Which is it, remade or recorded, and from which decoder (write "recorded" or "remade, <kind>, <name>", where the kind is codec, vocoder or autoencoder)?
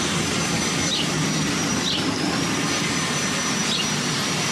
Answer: recorded